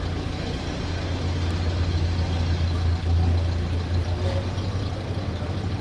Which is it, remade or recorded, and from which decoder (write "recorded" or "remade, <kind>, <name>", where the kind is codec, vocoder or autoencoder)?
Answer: recorded